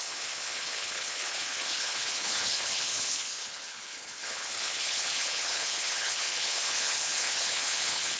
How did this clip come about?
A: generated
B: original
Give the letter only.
A